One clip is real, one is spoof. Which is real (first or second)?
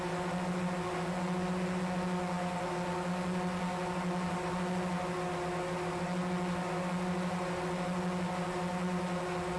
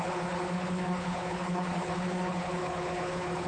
first